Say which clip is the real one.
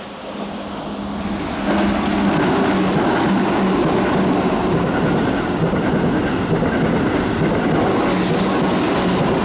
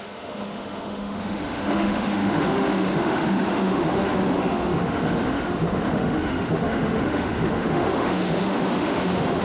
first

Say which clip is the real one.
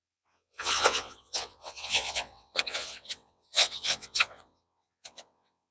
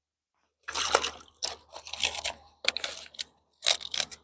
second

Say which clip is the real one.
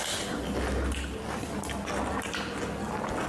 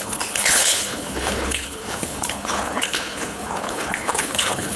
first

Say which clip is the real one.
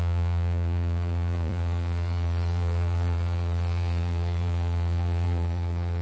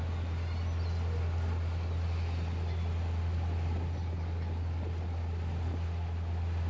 second